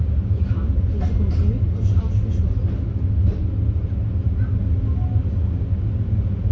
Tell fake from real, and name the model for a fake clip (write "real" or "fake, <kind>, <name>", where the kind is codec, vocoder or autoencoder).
real